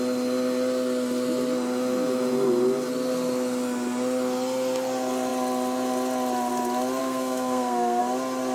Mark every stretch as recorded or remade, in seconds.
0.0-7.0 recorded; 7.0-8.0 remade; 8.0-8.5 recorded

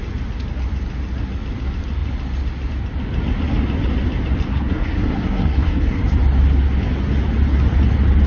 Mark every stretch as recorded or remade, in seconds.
0.0-4.5 recorded; 4.5-6.0 remade; 6.0-8.3 recorded

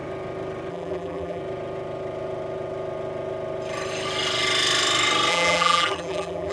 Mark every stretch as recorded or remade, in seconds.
0.0-0.7 recorded; 0.7-1.4 remade; 1.4-5.3 recorded; 5.3-6.5 remade

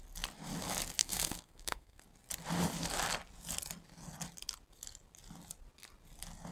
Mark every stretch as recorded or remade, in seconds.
0.0-1.0 recorded; 1.0-2.0 remade; 2.0-6.5 recorded

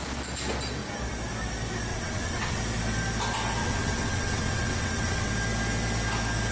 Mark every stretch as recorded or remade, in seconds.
0.0-1.9 recorded; 1.9-2.6 remade; 2.6-3.6 recorded; 3.6-5.3 remade; 5.3-6.5 recorded

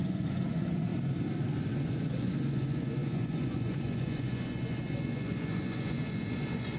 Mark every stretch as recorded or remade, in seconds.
0.0-0.9 remade; 0.9-1.7 recorded; 1.7-6.8 remade